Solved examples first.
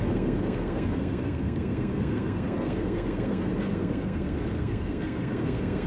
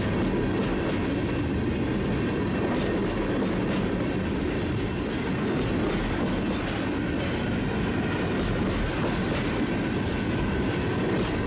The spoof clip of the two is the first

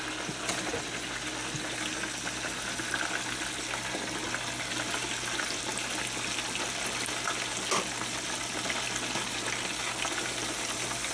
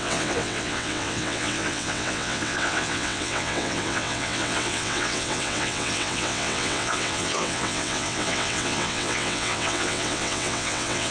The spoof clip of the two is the second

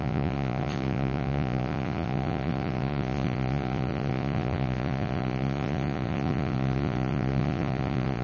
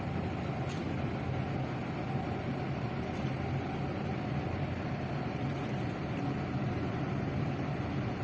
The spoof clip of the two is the first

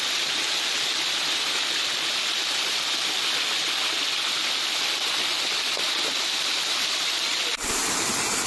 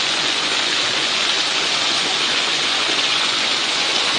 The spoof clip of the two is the second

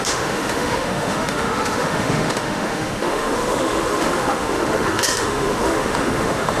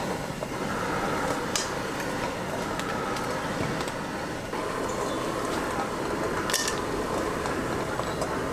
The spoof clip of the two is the first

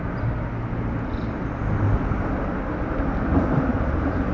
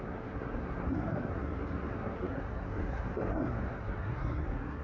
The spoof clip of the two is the second